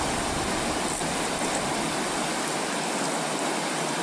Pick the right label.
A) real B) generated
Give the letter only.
A